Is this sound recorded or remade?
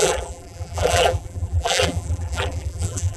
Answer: remade